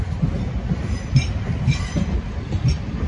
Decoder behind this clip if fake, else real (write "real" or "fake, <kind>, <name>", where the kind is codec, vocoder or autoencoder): real